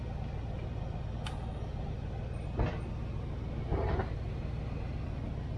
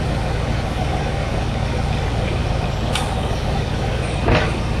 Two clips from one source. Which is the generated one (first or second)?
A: second